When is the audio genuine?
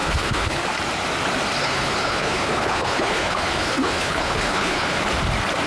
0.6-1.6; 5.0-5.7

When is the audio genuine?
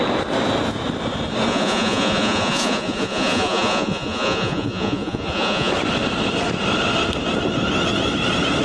0.0-1.5; 5.7-8.6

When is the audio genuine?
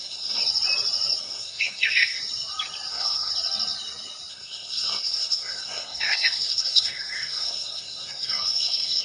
0.4-1.2; 2.2-2.9; 3.3-4.3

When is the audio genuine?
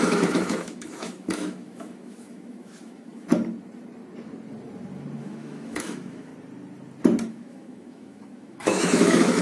3.3-5.2; 6.3-7.3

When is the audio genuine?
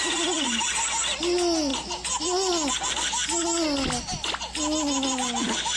0.0-5.8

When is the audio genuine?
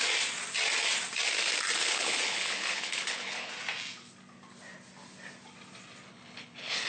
0.0-1.8; 3.5-6.1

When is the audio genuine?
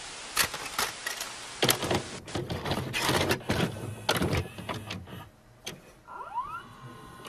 0.0-7.3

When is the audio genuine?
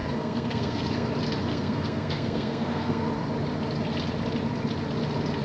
1.1-1.5; 3.1-5.4